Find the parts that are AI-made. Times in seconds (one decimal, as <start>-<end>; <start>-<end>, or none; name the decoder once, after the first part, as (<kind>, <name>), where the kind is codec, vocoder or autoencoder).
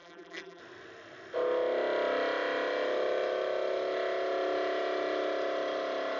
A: 0.0-0.6 (vocoder, BigVGAN v2)